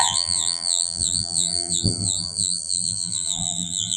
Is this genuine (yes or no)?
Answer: no